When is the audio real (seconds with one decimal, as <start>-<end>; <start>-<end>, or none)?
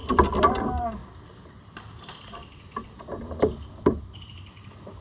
0.0-0.5; 1.0-4.0